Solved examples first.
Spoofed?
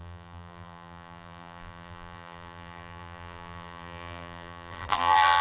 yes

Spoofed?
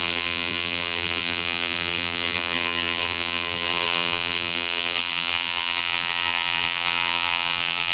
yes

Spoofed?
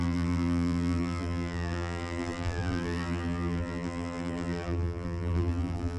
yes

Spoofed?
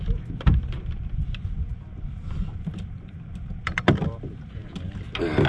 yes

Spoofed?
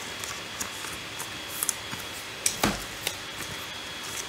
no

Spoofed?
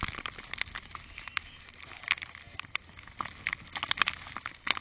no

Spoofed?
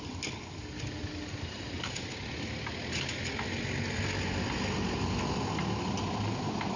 no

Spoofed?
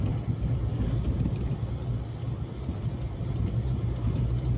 no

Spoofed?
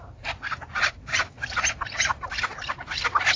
yes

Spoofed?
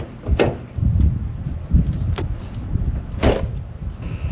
no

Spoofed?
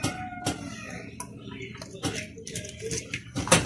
no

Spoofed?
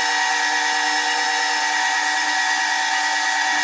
no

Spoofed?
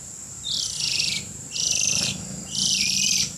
yes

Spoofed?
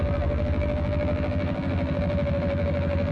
yes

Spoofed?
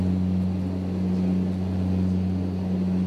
no